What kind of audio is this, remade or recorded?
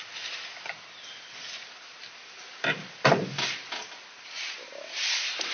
recorded